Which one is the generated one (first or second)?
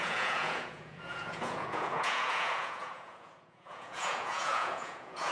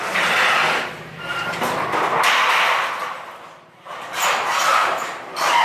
first